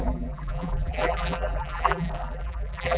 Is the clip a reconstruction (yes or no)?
yes